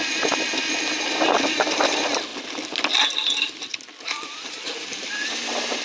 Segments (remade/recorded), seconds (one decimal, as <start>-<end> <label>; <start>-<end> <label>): 0.0-5.8 recorded

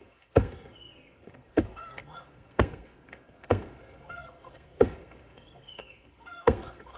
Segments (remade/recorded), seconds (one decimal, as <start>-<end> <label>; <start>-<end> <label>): 0.0-7.0 remade

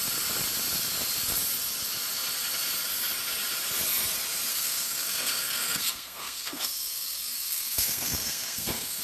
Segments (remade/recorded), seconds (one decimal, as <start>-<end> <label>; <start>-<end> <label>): 0.0-4.5 recorded; 4.5-9.0 remade

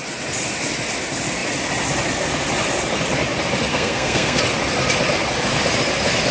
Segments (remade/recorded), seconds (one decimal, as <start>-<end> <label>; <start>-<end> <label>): 0.0-3.7 recorded; 3.7-4.4 remade; 4.4-6.3 recorded

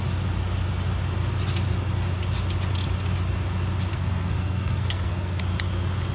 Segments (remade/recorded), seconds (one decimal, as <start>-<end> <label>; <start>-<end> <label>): 0.0-3.9 recorded; 3.9-5.4 remade; 5.4-6.1 recorded

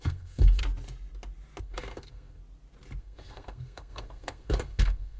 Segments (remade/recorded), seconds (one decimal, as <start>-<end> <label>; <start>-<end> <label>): 0.0-0.6 remade; 0.6-1.6 recorded; 1.6-2.4 remade; 2.4-3.0 recorded; 3.0-5.2 remade

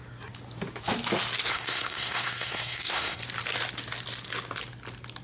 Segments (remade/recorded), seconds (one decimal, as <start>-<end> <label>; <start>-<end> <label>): 0.0-1.5 recorded; 1.5-3.2 remade; 3.2-5.2 recorded